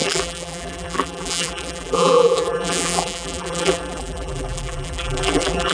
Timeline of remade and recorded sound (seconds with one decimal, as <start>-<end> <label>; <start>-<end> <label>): 0.0-5.7 remade